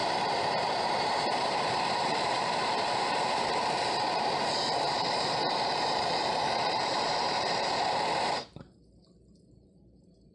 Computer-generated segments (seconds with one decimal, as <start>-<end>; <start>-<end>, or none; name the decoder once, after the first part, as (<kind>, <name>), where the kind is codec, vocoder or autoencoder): 0.0-10.3 (vocoder, BigVGAN v2)